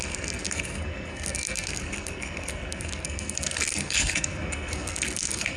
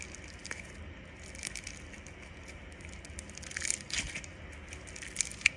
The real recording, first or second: second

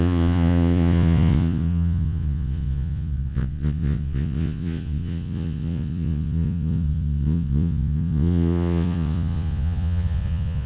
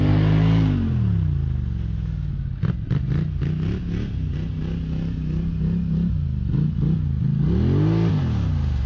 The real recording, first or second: second